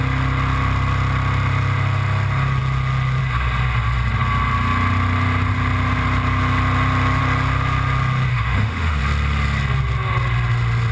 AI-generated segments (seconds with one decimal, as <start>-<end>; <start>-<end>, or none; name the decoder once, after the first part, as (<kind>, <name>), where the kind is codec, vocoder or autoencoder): 8.3-9.0 (autoencoder, DAC-VAE)